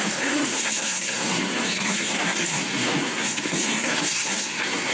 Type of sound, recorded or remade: remade